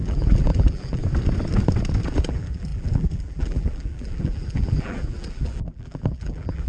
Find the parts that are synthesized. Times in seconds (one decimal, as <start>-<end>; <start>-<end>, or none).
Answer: 0.0-1.0; 2.1-6.7